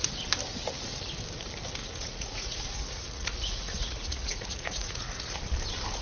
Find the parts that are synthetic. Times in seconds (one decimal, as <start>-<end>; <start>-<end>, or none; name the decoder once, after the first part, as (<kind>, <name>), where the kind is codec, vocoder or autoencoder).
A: 1.8-5.4 (vocoder, Vocos)